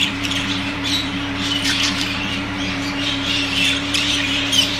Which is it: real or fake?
fake